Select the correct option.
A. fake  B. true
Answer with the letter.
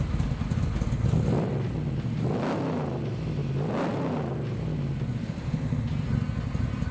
B